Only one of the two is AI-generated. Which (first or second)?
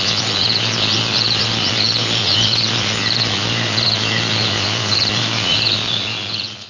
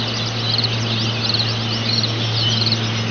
first